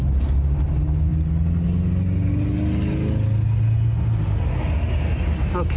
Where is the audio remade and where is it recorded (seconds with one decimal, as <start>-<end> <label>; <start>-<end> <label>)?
0.0-5.8 recorded